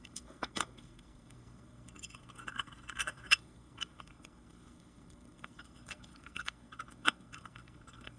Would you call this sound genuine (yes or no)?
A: no